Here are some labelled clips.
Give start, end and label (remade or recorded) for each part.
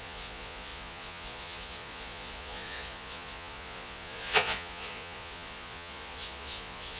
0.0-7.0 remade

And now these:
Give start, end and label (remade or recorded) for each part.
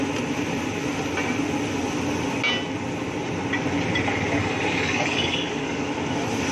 0.0-4.4 recorded; 4.4-5.9 remade; 5.9-6.5 recorded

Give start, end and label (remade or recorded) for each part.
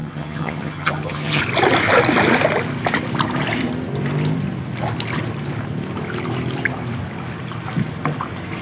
0.0-1.4 remade; 1.4-8.6 recorded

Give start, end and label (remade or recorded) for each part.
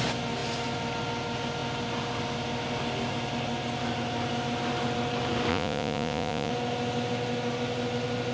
0.0-5.5 recorded; 5.5-6.5 remade; 6.5-8.3 recorded